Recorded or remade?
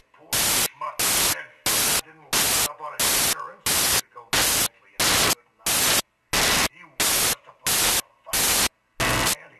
recorded